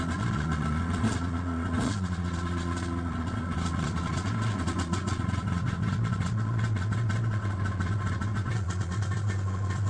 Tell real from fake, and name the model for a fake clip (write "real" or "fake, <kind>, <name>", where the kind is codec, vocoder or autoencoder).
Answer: fake, vocoder, Vocos